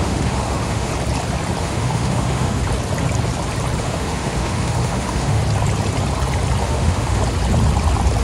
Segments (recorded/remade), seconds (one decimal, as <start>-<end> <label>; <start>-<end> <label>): 0.0-0.9 remade; 0.9-1.6 recorded; 1.6-2.6 remade; 2.6-3.8 recorded; 3.8-5.4 remade; 5.4-6.6 recorded; 6.6-7.2 remade; 7.2-8.2 recorded